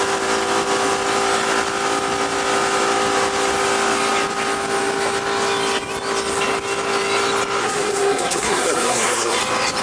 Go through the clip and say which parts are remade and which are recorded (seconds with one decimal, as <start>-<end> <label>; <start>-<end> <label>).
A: 0.0-7.6 recorded; 7.6-9.4 remade; 9.4-9.8 recorded